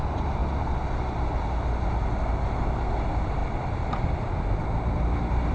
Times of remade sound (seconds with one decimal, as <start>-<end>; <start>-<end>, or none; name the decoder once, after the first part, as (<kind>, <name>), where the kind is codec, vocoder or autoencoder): none